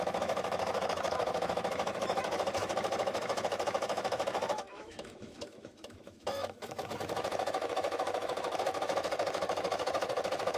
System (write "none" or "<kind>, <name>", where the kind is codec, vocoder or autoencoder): autoencoder, DAC-VAE